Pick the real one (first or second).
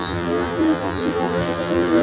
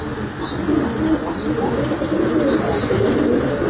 second